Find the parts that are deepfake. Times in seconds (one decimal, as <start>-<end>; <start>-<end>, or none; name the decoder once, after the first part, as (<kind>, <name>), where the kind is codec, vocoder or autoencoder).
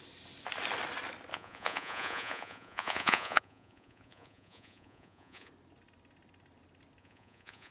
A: 1.3-5.5 (vocoder, Vocos); 7.0-7.7